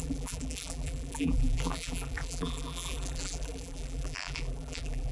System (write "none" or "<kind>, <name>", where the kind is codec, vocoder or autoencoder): vocoder, BigVGAN v2